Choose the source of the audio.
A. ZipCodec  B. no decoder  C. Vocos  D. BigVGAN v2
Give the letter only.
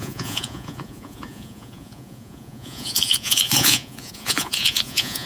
C